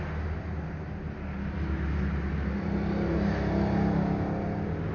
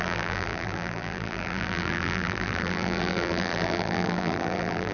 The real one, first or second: first